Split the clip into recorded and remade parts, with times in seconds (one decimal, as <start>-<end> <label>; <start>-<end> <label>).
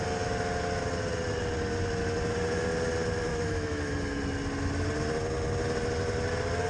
0.0-3.3 recorded; 3.3-3.9 remade; 3.9-6.7 recorded